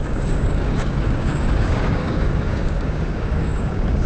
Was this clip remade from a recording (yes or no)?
yes